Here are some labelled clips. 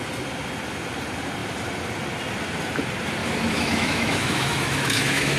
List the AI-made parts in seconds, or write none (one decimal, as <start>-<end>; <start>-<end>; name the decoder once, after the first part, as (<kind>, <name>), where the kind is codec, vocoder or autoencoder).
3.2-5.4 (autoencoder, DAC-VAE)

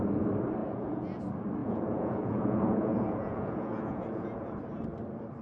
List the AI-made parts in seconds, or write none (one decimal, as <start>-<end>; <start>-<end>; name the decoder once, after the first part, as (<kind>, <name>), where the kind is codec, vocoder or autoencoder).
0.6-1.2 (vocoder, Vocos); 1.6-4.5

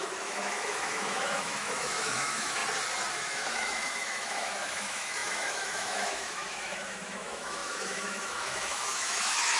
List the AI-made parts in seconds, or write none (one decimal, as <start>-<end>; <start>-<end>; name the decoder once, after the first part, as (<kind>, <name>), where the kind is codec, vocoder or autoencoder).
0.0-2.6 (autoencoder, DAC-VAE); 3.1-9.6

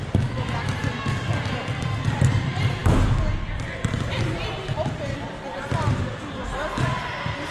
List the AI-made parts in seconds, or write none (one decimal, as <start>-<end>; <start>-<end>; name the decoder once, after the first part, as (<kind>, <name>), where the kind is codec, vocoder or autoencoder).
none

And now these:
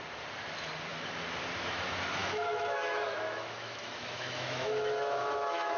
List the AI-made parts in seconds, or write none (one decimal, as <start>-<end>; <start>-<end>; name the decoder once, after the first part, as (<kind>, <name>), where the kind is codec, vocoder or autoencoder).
2.2-5.8 (autoencoder, DAC-VAE)

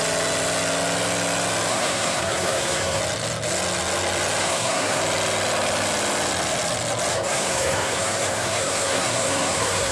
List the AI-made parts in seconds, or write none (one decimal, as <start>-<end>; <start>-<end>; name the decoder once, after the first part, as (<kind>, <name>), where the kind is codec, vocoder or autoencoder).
1.7-3.0 (codec, SNAC); 4.4-5.0; 7.1-9.9